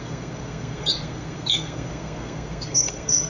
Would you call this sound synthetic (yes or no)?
yes